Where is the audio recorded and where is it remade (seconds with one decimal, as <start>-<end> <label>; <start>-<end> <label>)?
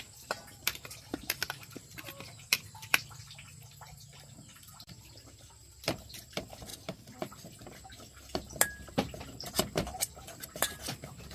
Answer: 0.0-6.7 remade; 6.7-10.5 recorded; 10.5-11.3 remade